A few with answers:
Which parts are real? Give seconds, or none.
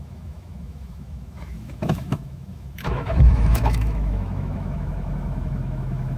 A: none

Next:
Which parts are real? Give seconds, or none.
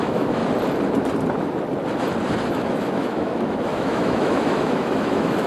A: 0.4-2.5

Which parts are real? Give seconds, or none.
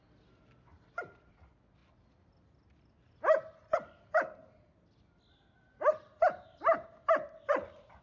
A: 0.0-8.0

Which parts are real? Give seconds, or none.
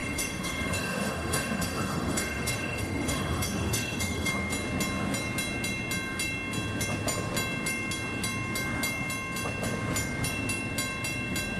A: 4.3-11.6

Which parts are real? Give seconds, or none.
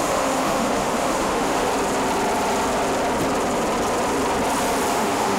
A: 1.7-4.9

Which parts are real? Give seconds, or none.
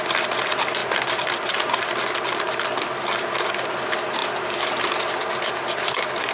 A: 0.0-6.3